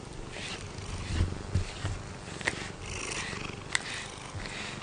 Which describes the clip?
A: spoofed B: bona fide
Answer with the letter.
B